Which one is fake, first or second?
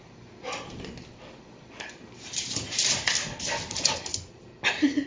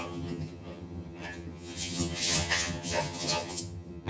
second